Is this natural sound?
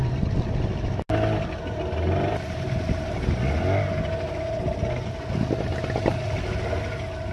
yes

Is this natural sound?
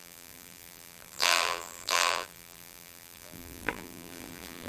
no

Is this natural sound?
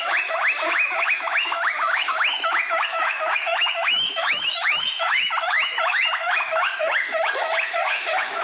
no